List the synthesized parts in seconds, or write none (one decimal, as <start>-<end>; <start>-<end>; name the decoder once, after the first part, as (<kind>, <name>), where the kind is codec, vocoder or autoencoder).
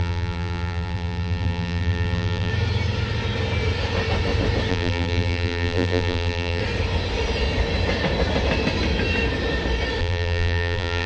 0.0-2.5 (vocoder, BigVGAN v2); 4.7-6.6; 10.0-11.1